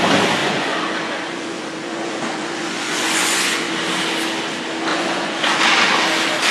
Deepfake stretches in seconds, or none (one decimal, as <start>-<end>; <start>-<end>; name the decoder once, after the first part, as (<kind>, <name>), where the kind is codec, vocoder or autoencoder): 0.4-3.7 (vocoder, Vocos); 4.9-5.6